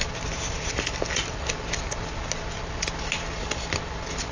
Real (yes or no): yes